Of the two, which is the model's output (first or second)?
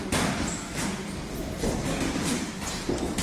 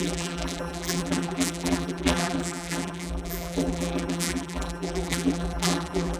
second